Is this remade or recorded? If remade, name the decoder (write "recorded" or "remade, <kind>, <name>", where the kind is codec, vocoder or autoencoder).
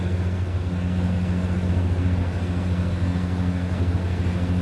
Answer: remade, codec, SNAC